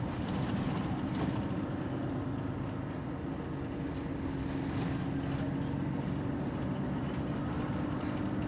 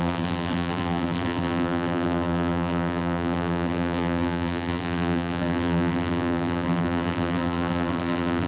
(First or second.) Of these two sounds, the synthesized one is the second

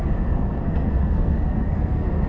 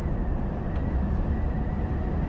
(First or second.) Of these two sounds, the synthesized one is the first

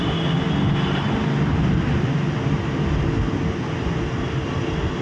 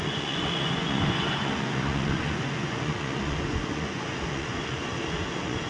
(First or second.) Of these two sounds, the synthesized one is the second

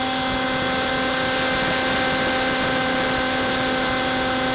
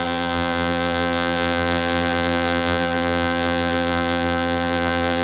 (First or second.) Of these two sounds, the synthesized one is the second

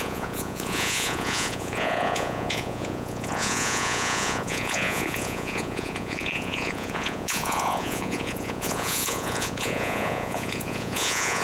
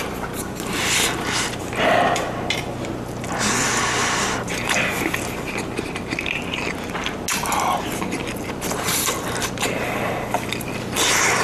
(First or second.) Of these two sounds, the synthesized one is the first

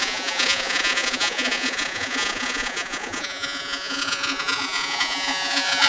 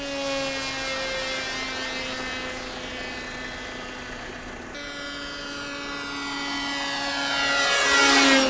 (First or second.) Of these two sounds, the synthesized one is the first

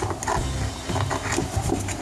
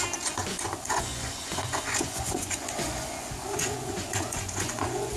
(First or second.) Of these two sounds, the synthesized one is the second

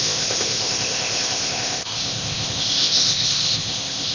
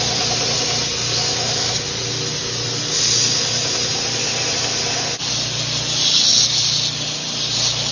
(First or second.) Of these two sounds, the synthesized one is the first